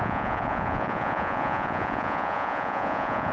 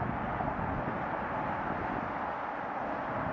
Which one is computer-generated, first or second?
first